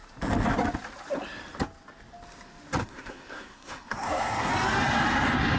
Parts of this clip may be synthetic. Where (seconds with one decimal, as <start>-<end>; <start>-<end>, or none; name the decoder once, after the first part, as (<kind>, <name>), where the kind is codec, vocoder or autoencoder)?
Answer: 2.8-4.5 (codec, SNAC)